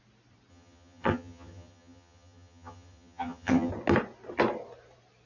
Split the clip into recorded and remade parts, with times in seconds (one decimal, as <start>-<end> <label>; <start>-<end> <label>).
0.0-0.5 recorded; 0.5-3.7 remade; 3.7-5.3 recorded